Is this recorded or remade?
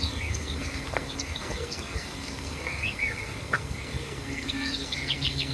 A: remade